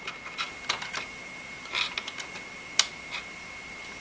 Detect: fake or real real